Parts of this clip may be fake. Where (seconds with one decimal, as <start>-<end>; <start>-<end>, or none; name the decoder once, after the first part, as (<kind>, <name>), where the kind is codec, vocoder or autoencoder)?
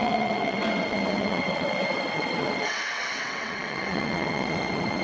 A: 0.0-5.0 (vocoder, WaveNeXt)